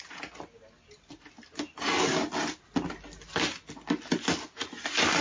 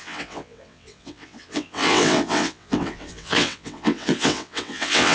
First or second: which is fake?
second